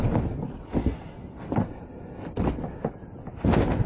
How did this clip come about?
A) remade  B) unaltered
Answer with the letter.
B